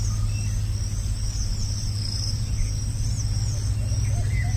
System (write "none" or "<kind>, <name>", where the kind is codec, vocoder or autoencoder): none